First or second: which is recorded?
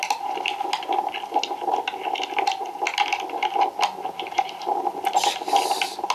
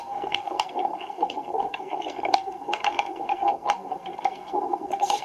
first